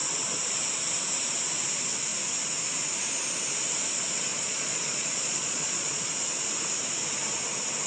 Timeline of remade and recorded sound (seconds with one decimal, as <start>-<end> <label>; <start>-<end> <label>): 0.0-4.3 recorded; 4.3-6.0 remade; 6.0-7.9 recorded